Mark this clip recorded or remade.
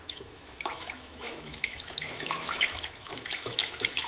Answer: remade